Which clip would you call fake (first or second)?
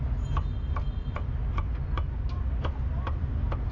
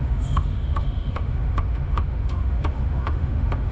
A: second